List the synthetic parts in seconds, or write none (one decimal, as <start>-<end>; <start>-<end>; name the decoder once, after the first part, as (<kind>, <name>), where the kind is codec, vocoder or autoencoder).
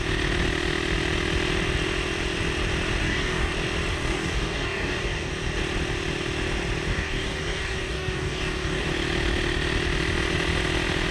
3.0-3.5 (codec, DAC); 3.9-5.3; 6.9-8.9